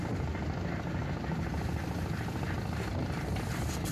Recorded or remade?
recorded